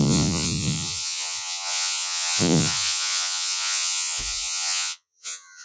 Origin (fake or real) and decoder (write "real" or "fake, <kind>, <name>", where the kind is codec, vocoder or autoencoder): fake, vocoder, Vocos